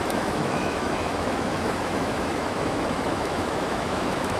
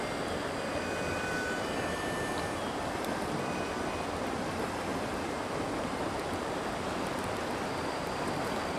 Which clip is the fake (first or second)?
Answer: first